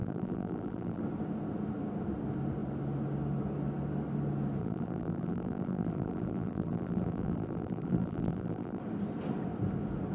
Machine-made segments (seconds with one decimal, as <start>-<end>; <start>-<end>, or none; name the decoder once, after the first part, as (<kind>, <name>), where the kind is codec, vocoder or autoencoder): 0.0-1.0 (vocoder, BigVGAN v2); 4.6-8.8

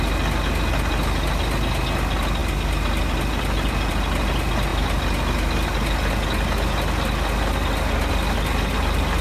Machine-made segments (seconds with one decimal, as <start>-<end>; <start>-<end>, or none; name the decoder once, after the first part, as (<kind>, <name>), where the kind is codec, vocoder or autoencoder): none